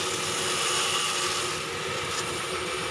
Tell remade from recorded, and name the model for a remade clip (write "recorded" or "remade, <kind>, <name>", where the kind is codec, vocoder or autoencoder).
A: recorded